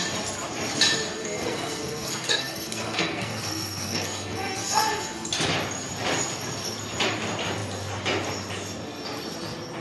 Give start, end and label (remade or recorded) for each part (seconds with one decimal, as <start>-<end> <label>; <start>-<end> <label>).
0.0-1.1 recorded; 1.1-5.3 remade; 5.3-9.8 recorded